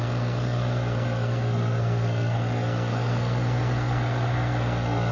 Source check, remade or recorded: remade